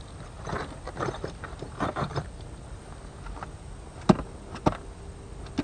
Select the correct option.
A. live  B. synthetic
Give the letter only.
A